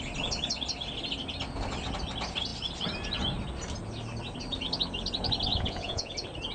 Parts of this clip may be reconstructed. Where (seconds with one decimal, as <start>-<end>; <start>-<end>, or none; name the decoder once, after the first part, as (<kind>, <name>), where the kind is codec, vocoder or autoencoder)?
5.5-6.1 (vocoder, Vocos)